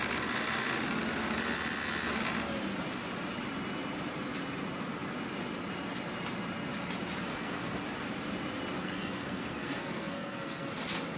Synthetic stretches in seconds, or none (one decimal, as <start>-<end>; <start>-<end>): 7.3-7.8; 8.8-10.7